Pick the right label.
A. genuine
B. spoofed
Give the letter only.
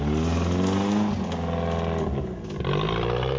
A